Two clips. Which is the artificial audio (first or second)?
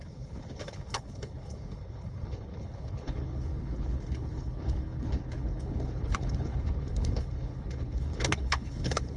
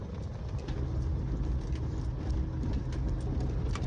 first